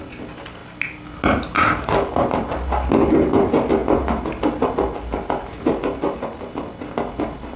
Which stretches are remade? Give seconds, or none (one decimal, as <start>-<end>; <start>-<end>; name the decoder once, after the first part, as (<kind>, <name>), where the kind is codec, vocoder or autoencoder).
none